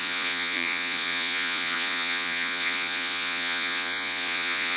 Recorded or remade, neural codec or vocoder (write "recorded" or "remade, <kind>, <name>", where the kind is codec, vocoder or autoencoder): remade, vocoder, Vocos